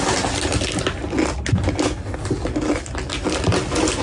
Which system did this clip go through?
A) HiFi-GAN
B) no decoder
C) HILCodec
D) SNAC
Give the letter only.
B